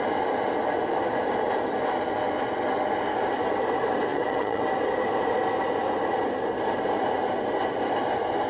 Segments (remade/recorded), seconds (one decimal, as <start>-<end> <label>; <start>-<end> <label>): 0.0-4.1 recorded; 4.1-4.6 remade; 4.6-8.5 recorded